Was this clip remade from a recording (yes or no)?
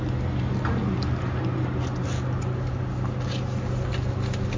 no